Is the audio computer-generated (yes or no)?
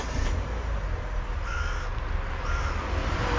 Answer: no